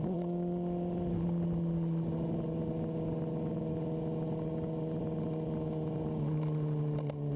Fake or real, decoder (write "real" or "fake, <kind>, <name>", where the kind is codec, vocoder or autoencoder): real